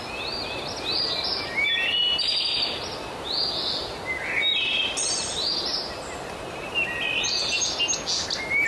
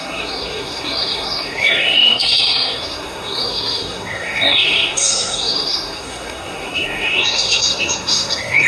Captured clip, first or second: first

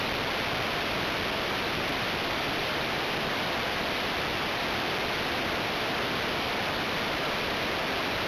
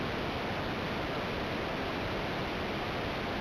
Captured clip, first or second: second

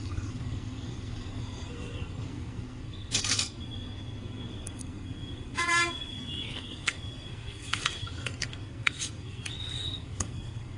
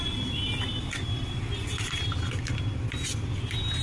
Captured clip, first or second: second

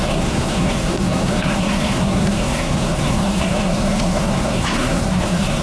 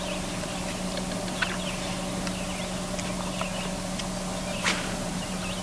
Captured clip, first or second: second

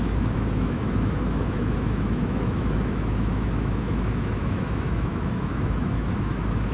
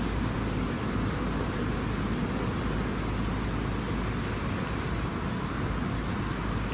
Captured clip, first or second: second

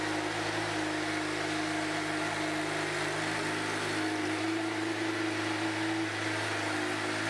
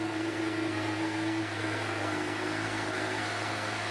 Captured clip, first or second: first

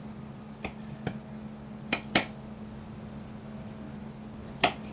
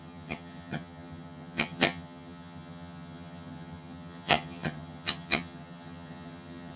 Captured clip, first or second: first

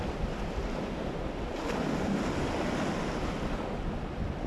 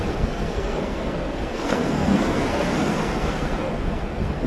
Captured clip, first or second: first